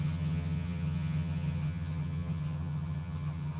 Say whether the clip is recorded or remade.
remade